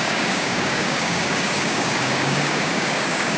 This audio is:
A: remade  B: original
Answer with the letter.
A